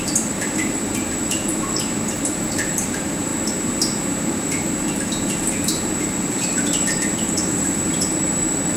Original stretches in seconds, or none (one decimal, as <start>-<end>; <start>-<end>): 3.3-4.2